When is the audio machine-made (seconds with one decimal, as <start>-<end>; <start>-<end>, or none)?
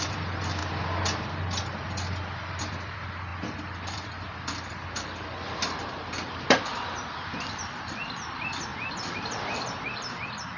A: 0.0-0.6; 2.6-8.7; 9.2-10.6